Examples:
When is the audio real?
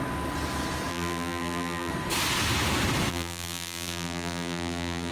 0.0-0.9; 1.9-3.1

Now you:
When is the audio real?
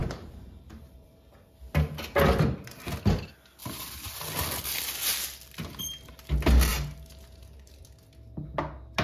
1.1-6.7; 7.8-9.0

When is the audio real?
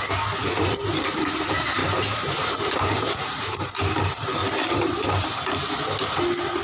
0.0-1.8; 3.6-4.4; 5.7-6.6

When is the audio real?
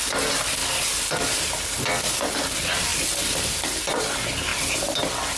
0.0-0.6; 1.4-2.9; 3.8-5.4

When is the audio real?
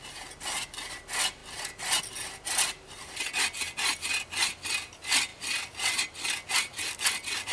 0.0-7.5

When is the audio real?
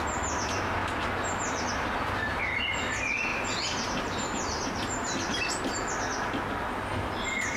0.0-0.8; 2.4-3.3; 5.9-7.6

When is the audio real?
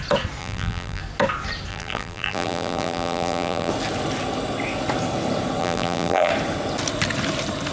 0.0-0.4; 1.0-1.7; 3.7-5.6; 6.3-7.7